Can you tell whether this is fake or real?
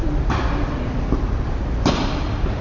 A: real